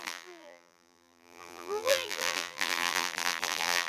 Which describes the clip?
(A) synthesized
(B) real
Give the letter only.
A